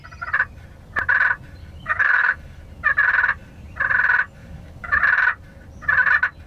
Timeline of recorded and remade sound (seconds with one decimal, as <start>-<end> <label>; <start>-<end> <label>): 0.0-1.6 recorded; 1.6-2.6 remade; 2.6-4.4 recorded; 4.4-5.0 remade; 5.0-6.5 recorded